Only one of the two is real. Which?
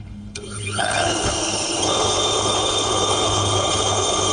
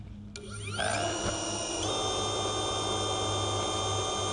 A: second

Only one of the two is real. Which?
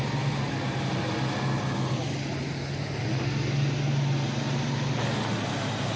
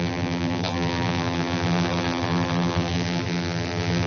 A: first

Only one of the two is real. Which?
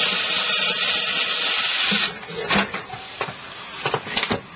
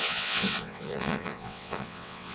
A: first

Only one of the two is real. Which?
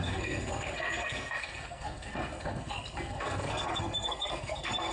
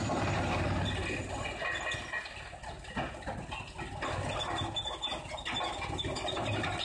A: second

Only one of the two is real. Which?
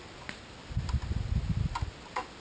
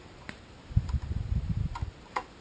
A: first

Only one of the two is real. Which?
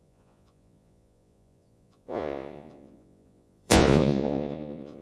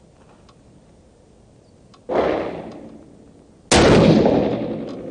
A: second